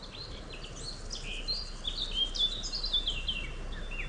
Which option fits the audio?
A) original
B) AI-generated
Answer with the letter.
A